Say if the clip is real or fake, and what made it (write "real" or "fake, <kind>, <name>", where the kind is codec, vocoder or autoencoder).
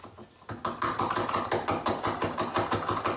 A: real